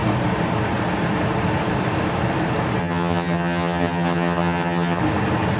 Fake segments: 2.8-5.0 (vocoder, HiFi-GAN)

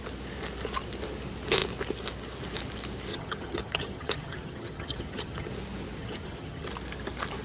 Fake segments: 3.1-5.5 (vocoder, HiFi-GAN); 6.0-6.7

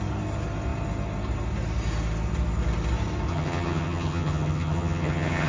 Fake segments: 3.3-5.5 (vocoder, HiFi-GAN)